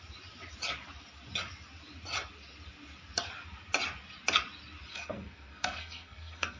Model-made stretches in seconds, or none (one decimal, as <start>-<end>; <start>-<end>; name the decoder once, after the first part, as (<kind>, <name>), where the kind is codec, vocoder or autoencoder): 4.9-6.6 (codec, SNAC)